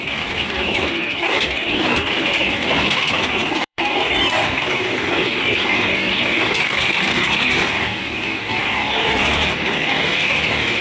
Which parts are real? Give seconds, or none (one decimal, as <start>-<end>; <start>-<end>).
none